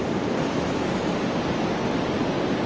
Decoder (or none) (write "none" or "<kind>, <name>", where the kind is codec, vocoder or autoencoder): none